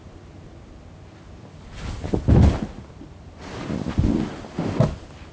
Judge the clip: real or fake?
real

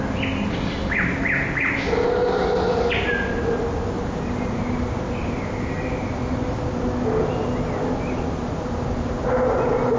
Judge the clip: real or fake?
real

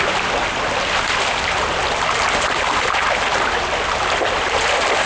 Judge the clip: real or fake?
real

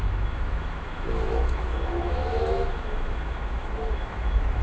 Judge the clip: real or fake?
fake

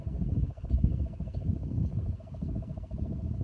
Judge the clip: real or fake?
fake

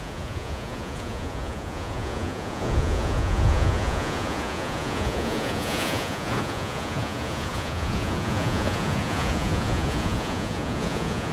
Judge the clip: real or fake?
fake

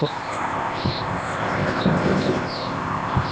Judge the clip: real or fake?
fake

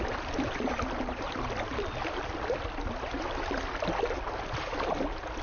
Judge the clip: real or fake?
real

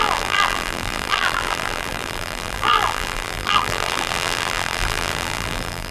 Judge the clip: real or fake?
fake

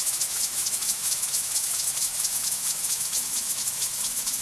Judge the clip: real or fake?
fake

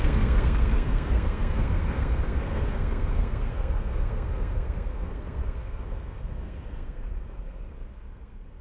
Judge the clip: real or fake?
fake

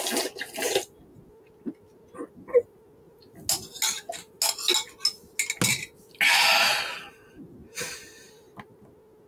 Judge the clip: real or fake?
real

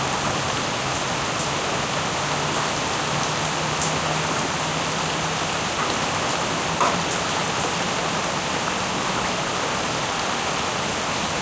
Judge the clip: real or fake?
real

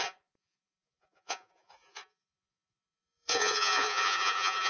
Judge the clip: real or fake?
fake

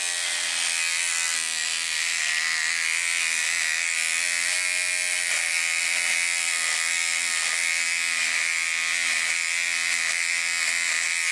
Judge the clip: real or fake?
real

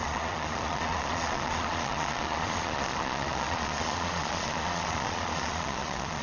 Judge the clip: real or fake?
fake